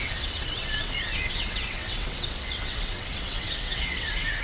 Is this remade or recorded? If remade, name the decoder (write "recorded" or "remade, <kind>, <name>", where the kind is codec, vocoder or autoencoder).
remade, vocoder, WaveNeXt